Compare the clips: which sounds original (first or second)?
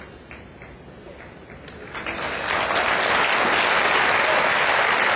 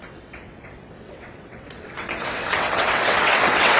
first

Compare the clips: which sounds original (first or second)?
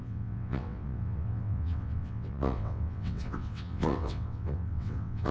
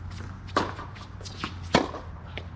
second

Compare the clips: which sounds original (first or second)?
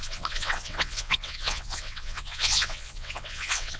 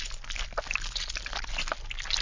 second